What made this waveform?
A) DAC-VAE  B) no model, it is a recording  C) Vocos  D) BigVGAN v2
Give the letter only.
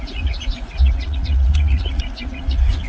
C